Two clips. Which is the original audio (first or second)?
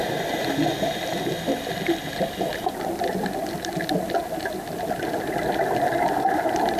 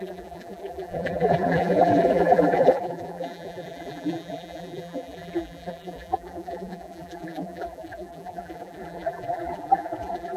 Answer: first